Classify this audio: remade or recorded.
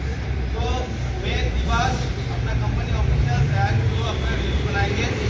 remade